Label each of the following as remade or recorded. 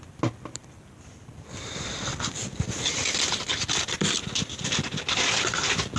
remade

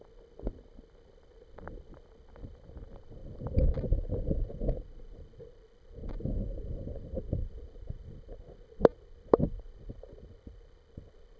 recorded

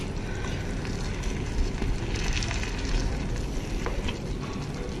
recorded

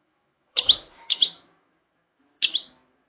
remade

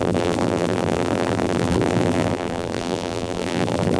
remade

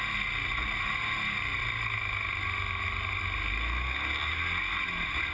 recorded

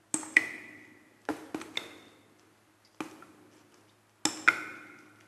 recorded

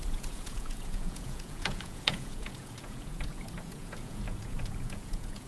remade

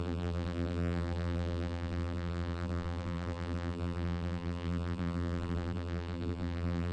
remade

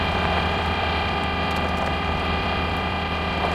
remade